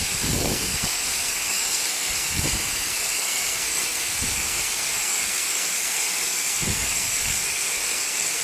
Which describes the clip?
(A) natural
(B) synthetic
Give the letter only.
B